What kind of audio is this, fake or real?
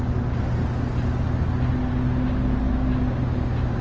real